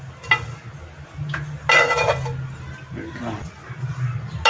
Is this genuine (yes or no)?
yes